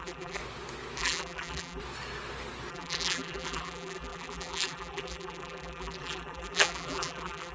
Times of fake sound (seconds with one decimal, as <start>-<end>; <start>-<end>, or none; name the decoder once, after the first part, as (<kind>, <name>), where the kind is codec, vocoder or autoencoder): 0.0-0.4 (vocoder, BigVGAN v2); 1.0-1.8; 2.7-7.5